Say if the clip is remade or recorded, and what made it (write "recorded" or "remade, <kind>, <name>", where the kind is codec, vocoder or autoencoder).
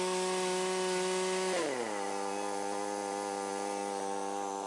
recorded